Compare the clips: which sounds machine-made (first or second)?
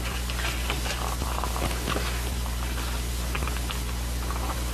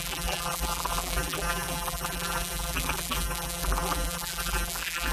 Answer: second